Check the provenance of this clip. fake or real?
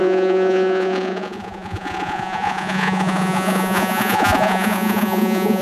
fake